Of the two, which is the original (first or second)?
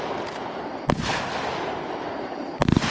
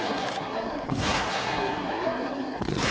first